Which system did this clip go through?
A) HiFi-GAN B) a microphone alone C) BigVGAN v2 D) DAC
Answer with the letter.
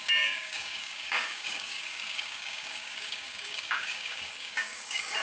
D